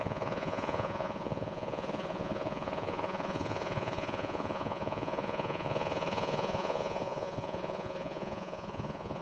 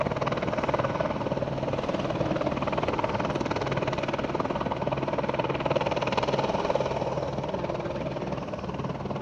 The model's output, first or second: first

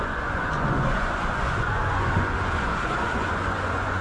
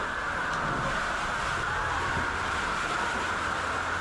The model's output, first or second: first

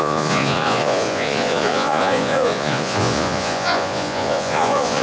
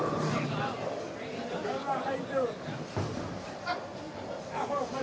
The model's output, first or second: first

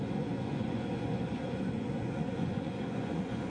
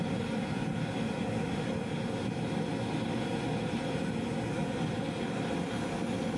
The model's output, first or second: first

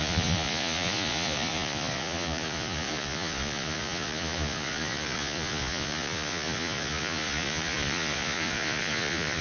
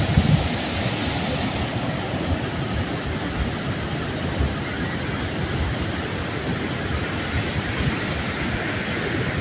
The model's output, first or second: first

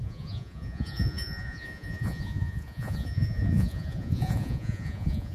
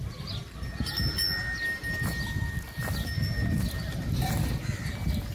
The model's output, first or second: first